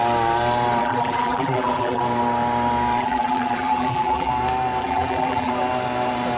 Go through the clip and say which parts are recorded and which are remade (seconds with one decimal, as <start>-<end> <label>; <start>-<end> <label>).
0.0-0.8 recorded; 0.8-2.0 remade; 2.0-3.0 recorded; 3.0-4.3 remade; 4.3-4.8 recorded; 4.8-5.5 remade; 5.5-6.4 recorded

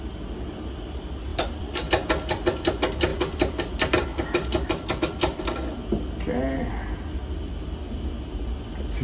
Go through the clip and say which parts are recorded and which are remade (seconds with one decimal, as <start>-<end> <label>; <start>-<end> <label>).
0.0-1.3 recorded; 1.3-1.9 remade; 1.9-3.1 recorded; 3.1-5.0 remade; 5.0-9.0 recorded